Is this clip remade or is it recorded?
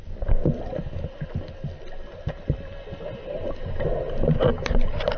recorded